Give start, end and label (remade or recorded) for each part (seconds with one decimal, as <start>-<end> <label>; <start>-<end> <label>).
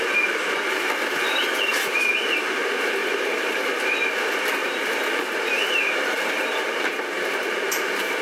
0.0-3.0 recorded; 3.0-3.6 remade; 3.6-4.6 recorded; 4.6-8.2 remade